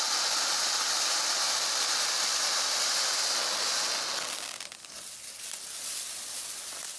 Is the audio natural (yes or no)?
yes